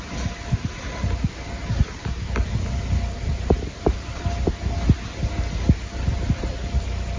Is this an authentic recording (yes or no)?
yes